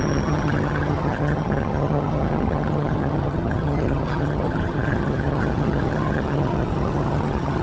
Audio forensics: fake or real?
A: fake